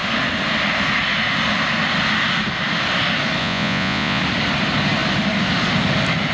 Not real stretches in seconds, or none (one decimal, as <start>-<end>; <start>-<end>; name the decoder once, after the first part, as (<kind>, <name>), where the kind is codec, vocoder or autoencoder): 3.4-4.2 (vocoder, Vocos)

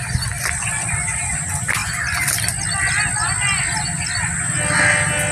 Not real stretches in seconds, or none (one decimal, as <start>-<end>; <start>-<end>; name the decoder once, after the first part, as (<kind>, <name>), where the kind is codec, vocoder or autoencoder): none

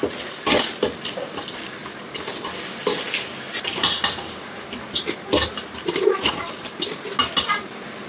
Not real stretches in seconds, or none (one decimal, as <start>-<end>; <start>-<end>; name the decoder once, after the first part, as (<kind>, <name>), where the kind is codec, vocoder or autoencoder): none